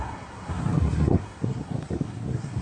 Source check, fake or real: fake